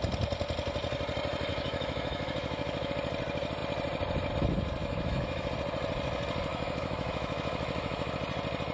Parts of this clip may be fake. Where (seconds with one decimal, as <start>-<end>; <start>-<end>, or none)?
1.5-2.9; 4.8-5.5; 6.5-8.1